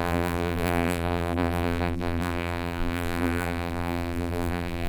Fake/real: fake